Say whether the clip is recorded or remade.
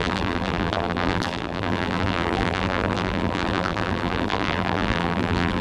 remade